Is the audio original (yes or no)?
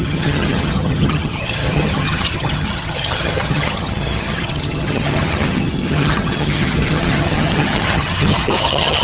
no